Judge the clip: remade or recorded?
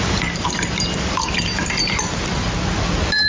recorded